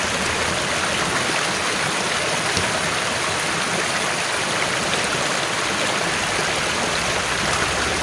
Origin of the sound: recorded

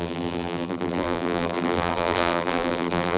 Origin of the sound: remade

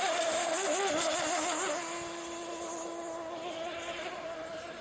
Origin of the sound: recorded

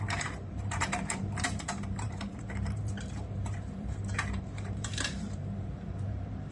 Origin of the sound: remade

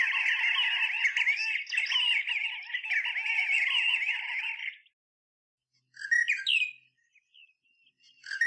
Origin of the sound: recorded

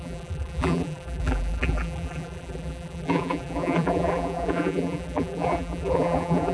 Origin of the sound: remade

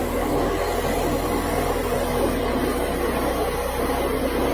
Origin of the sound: recorded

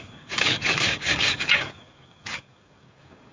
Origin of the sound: remade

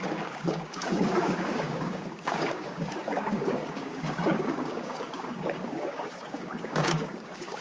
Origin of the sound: remade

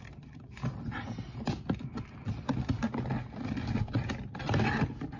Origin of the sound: recorded